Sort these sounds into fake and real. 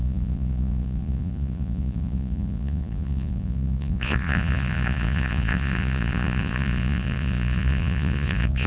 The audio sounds fake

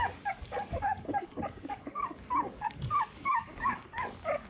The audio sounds fake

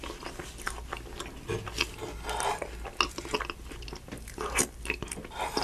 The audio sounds real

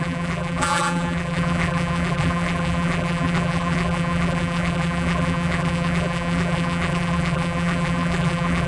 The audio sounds fake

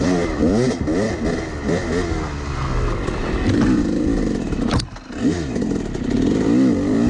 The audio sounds real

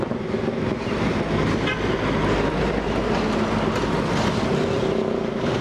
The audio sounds real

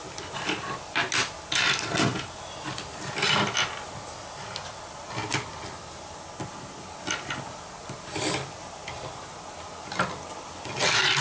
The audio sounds real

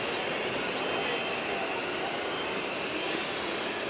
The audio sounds real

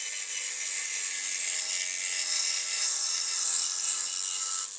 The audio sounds real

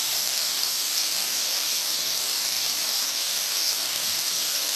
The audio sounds fake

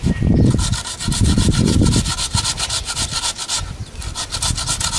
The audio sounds real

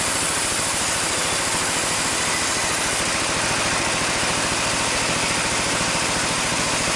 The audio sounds real